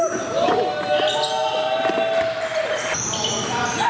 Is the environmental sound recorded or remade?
recorded